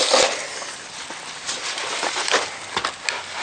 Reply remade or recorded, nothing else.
recorded